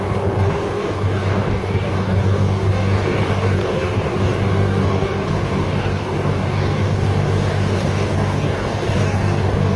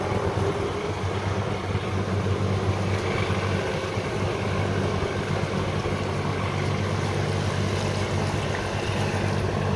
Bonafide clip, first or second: second